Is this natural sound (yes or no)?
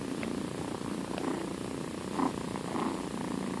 yes